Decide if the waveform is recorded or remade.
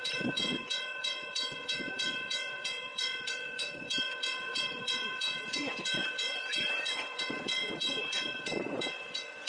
remade